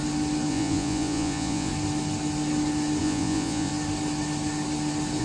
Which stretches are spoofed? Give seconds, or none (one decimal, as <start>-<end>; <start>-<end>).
0.5-1.7; 3.0-3.7